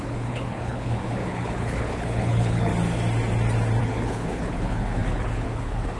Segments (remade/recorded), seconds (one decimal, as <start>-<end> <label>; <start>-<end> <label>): 0.0-2.7 remade; 2.7-3.8 recorded; 3.8-6.0 remade